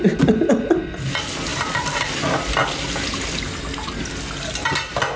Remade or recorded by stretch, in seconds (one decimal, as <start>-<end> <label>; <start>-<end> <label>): 0.0-1.5 recorded; 1.5-2.1 remade; 2.1-5.2 recorded